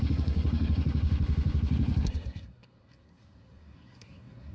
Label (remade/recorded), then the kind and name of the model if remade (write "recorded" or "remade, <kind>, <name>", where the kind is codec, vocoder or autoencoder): remade, codec, SNAC